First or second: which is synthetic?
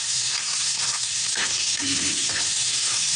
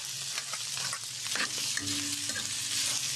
first